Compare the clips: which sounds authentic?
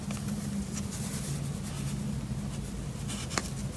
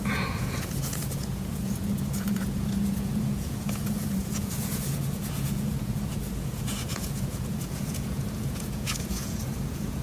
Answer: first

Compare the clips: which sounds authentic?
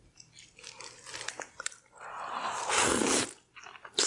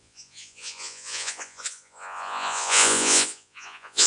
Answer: first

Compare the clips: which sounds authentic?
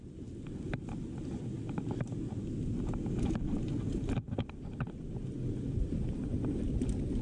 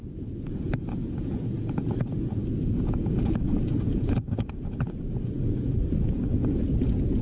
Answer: first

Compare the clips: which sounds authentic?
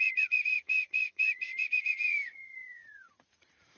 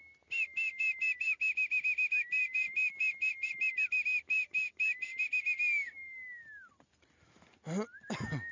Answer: second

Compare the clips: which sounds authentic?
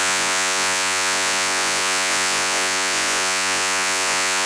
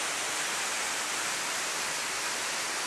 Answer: second